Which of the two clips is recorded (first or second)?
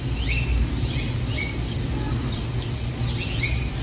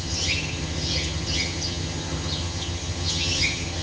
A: first